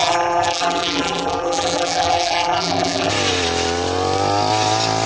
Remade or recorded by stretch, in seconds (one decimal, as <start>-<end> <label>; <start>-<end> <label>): 0.0-3.1 remade; 3.1-5.1 recorded